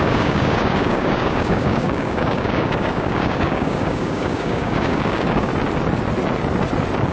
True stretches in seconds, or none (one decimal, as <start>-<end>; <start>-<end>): 5.5-7.1